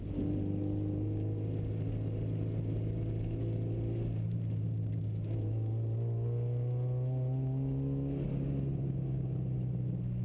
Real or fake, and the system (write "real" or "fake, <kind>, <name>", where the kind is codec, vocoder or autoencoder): real